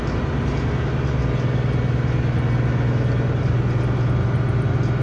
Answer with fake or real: real